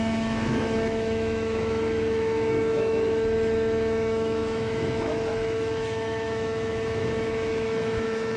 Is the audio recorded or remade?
remade